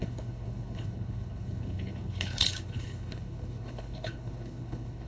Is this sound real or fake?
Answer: fake